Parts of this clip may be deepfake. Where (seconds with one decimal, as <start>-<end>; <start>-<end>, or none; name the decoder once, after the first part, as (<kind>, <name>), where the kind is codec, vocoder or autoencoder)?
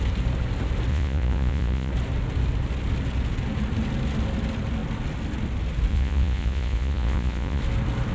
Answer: 0.9-1.9 (vocoder, Vocos); 5.9-7.6